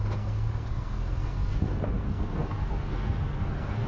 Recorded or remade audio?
remade